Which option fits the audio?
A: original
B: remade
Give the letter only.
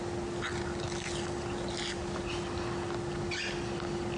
A